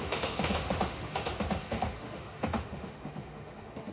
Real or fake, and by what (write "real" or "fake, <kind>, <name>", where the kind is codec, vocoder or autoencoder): fake, autoencoder, DAC-VAE